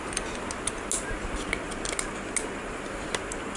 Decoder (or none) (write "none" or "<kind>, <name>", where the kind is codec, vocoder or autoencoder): none